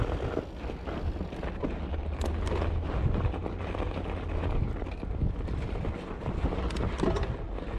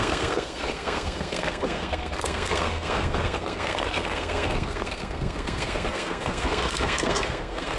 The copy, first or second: second